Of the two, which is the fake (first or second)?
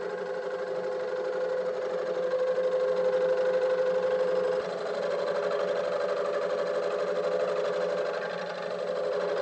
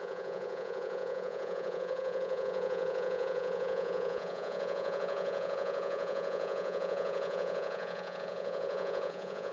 second